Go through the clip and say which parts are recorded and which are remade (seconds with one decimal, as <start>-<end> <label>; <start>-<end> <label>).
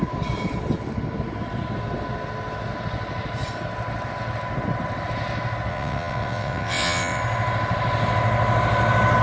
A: 0.0-5.7 recorded; 5.7-7.2 remade; 7.2-9.2 recorded